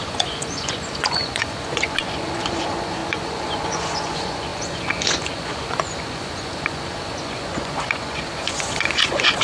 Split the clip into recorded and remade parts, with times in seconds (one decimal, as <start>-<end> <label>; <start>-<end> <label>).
0.0-9.4 remade